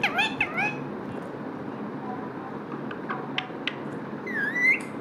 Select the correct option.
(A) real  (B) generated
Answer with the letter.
A